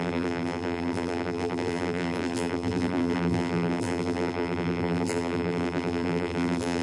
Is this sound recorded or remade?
remade